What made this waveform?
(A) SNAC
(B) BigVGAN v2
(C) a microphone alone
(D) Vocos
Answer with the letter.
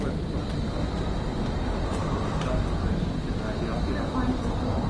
C